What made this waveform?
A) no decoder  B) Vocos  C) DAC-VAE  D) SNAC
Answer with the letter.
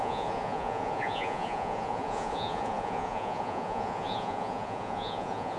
B